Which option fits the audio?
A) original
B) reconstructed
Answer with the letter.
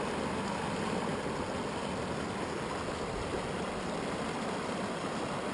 A